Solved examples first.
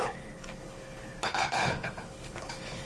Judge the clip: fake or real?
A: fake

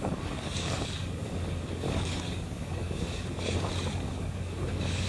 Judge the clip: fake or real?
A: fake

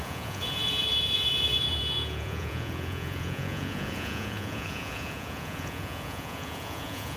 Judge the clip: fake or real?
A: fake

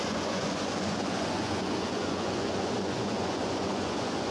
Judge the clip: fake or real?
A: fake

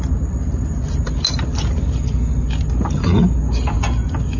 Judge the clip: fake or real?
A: real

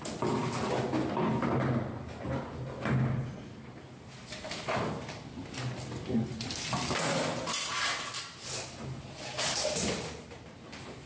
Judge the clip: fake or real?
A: real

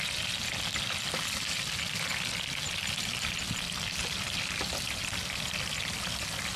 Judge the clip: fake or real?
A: real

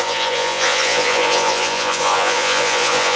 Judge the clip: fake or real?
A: fake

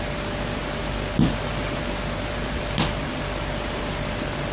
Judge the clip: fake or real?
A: real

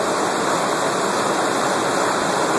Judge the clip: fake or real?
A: real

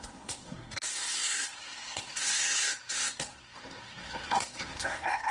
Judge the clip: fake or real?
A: fake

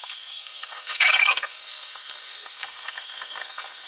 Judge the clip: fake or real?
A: fake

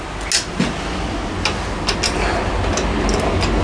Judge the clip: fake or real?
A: real